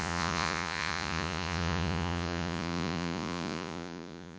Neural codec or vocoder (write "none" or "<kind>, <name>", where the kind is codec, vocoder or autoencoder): vocoder, Vocos